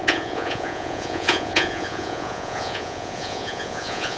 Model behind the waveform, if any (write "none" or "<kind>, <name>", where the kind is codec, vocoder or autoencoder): vocoder, Vocos